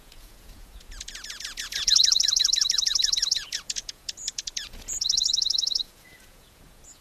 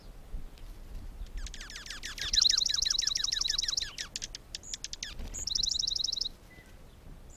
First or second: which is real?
second